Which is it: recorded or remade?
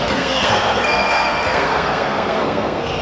remade